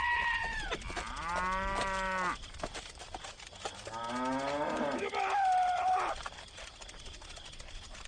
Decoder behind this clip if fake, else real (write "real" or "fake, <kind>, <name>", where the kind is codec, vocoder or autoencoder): real